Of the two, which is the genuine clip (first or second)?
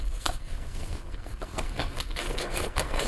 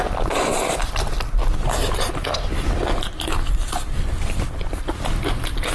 second